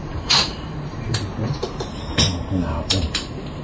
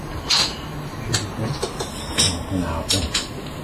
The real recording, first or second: second